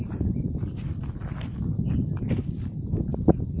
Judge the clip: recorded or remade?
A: recorded